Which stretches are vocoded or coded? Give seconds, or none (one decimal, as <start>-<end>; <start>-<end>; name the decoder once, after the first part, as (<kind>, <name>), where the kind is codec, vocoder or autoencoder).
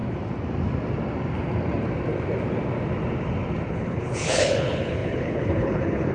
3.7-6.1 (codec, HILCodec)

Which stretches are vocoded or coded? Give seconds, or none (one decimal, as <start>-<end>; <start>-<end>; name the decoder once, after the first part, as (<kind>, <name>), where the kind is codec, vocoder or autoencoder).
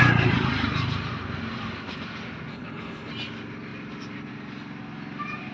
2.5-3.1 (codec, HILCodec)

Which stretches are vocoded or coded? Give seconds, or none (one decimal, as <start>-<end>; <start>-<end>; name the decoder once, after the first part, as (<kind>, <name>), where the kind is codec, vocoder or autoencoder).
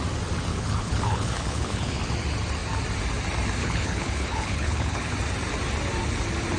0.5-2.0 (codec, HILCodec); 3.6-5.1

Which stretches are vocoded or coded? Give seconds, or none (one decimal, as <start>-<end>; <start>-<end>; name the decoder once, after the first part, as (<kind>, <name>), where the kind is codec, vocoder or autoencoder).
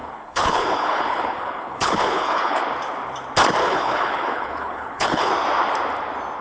0.0-2.6 (codec, HILCodec); 3.6-5.3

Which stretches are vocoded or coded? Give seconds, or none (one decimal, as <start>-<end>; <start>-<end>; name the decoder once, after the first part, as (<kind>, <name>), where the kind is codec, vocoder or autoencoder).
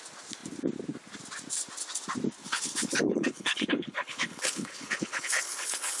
2.4-6.0 (codec, HILCodec)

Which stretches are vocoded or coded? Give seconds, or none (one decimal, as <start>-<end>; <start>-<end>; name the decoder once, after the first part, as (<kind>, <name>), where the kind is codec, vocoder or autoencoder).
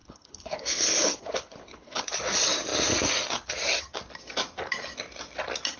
0.0-2.0 (codec, HILCodec)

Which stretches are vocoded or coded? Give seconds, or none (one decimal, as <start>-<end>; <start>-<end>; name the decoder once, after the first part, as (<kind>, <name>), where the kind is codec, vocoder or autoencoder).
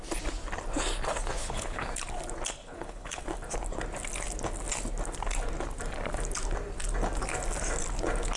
1.4-1.9 (codec, HILCodec); 2.6-3.2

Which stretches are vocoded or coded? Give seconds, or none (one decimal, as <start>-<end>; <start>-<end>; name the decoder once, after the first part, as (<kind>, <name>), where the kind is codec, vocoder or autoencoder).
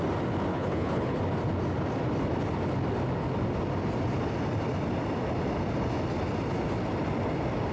0.5-1.2 (codec, HILCodec)